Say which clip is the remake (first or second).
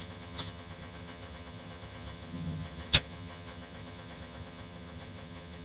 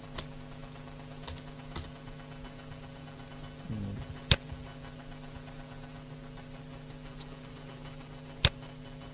first